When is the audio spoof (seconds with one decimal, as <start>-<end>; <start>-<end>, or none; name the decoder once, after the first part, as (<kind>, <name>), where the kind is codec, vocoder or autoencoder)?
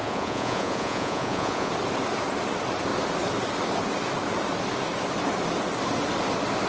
0.0-1.7 (vocoder, Vocos)